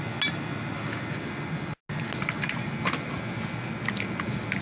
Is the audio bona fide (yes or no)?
yes